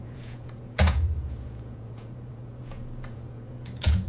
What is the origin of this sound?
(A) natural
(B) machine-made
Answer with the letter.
B